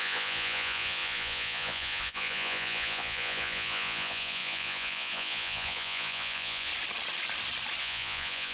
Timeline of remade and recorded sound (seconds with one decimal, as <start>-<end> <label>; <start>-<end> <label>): 0.0-6.7 remade; 6.7-7.8 recorded; 7.8-8.5 remade